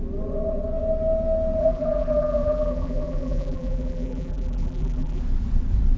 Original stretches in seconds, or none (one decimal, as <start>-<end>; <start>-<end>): 0.0-1.6; 5.2-6.0